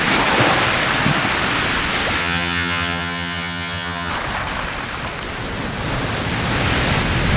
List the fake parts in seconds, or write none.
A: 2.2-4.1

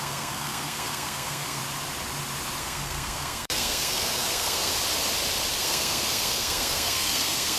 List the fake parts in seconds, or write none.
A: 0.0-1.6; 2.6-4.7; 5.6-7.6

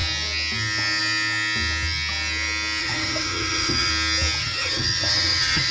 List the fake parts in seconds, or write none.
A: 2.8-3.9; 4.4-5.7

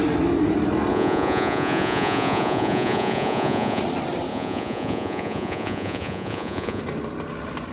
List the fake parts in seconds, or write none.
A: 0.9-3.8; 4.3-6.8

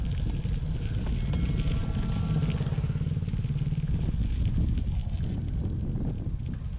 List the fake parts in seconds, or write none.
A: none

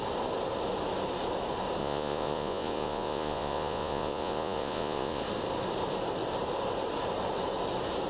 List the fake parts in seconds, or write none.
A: 1.8-5.2